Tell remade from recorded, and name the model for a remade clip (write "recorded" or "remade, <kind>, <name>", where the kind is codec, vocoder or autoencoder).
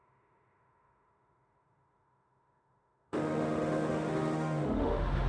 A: remade, autoencoder, DAC-VAE